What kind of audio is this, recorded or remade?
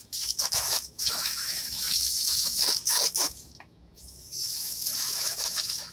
remade